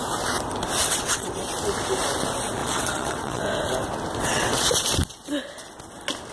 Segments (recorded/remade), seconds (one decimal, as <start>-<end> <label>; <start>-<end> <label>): 0.0-0.8 recorded; 0.8-1.3 remade; 1.3-2.6 recorded; 2.6-3.4 remade; 3.4-4.2 recorded; 4.2-4.7 remade; 4.7-6.3 recorded